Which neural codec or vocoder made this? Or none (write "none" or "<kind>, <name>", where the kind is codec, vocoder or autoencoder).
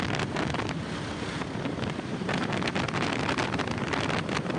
none